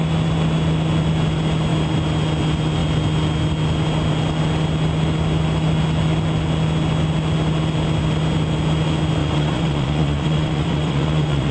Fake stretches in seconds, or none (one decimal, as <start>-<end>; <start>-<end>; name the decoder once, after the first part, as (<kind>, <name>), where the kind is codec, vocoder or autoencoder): 9.2-11.5 (vocoder, Vocos)

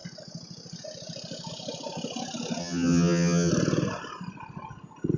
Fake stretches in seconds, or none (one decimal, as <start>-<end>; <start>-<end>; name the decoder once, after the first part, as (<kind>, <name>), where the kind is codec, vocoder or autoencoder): 2.6-3.5 (vocoder, HiFi-GAN)

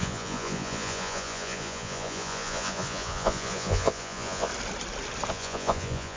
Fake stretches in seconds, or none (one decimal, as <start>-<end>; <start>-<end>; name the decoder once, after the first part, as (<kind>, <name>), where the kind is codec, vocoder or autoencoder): 0.0-4.5 (vocoder, Vocos); 5.3-6.2

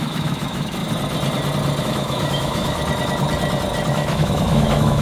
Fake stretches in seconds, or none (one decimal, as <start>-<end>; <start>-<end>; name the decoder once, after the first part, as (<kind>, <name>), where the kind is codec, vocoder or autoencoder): 0.0-0.8 (autoencoder, DAC-VAE); 1.8-2.8; 3.9-5.0

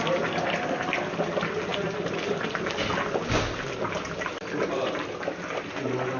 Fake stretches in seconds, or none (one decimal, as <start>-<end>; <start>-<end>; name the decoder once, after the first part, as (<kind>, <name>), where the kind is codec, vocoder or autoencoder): none

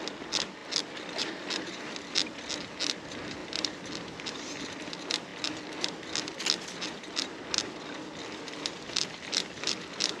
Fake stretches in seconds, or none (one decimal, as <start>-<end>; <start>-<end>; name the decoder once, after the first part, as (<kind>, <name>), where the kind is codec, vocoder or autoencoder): none